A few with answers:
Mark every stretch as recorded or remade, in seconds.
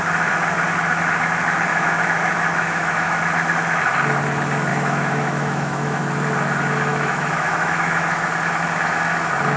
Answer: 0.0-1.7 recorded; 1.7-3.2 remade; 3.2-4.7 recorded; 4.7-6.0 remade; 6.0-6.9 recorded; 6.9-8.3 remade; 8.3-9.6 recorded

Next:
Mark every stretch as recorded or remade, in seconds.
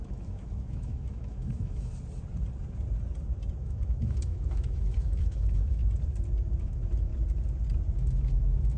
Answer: 0.0-1.9 remade; 1.9-3.6 recorded; 3.6-5.8 remade; 5.8-6.6 recorded; 6.6-7.1 remade; 7.1-8.0 recorded; 8.0-8.8 remade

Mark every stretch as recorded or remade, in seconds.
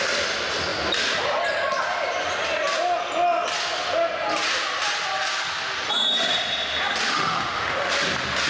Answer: 0.0-7.1 recorded; 7.1-7.9 remade; 7.9-8.5 recorded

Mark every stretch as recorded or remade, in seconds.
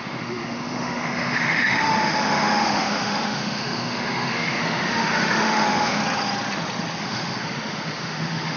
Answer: 0.0-6.0 remade; 6.0-7.0 recorded; 7.0-8.6 remade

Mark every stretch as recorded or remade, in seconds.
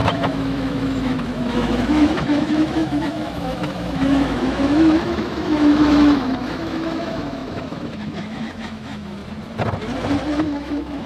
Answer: 0.0-9.2 remade; 9.2-10.4 recorded; 10.4-11.1 remade